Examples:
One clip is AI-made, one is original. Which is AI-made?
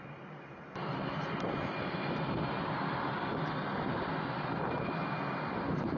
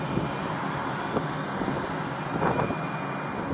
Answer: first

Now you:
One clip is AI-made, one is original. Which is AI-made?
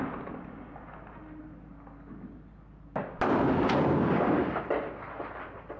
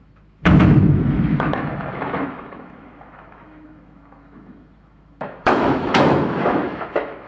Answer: second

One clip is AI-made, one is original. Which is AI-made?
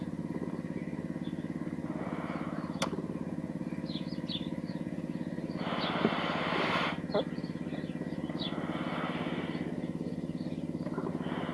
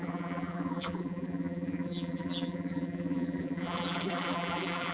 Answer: second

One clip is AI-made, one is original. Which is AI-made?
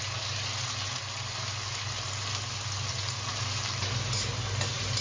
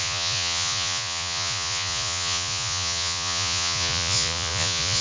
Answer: second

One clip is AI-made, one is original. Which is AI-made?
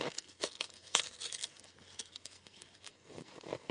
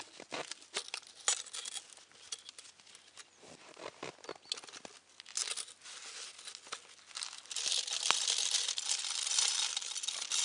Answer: first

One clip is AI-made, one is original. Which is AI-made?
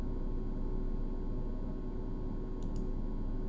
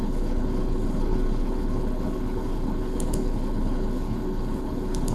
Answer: second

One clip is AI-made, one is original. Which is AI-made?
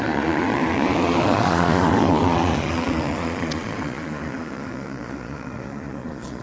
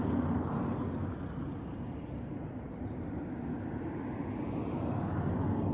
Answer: first